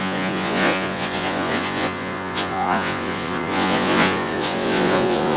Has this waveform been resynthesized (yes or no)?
yes